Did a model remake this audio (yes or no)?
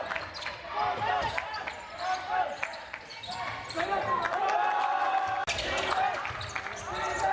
no